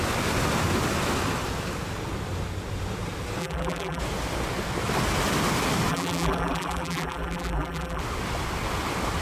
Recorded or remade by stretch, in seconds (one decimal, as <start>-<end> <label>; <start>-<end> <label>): 0.0-3.4 recorded; 3.4-4.0 remade; 4.0-5.9 recorded; 5.9-8.0 remade; 8.0-9.2 recorded